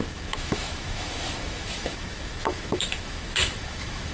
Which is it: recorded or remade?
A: remade